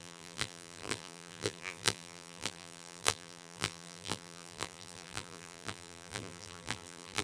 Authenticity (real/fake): fake